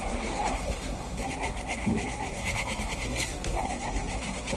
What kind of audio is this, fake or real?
fake